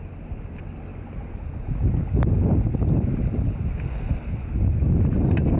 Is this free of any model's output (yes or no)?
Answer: yes